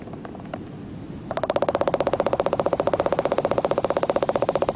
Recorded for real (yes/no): yes